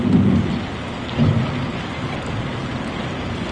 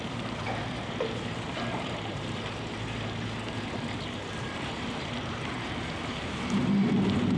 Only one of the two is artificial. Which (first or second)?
second